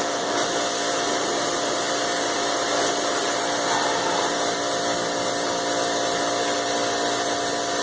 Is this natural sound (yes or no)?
yes